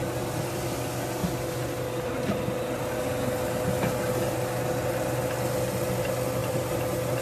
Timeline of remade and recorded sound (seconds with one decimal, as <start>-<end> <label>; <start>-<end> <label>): 0.0-7.2 recorded